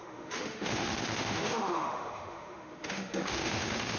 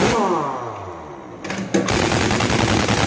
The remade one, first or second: first